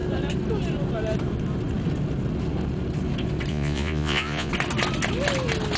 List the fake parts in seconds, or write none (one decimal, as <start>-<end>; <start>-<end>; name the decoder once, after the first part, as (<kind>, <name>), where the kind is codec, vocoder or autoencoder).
3.5-4.5 (vocoder, Vocos)